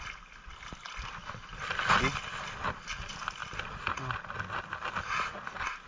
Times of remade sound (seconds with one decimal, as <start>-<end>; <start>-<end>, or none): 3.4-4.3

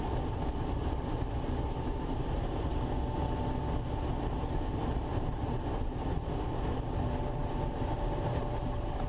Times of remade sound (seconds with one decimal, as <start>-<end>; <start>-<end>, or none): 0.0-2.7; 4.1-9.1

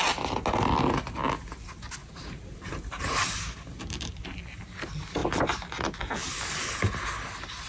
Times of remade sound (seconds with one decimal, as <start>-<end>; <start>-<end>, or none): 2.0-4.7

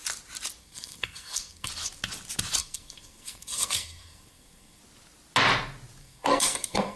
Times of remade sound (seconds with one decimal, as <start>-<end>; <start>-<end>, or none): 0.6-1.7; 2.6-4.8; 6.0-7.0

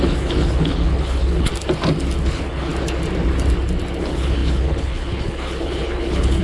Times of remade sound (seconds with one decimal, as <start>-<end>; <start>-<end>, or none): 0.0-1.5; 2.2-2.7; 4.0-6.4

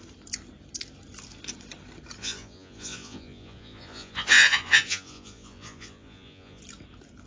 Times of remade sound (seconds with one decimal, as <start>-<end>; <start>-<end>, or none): 2.2-6.6